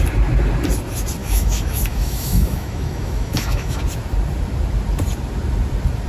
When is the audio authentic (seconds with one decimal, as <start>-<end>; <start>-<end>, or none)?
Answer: 0.0-1.2; 3.8-6.1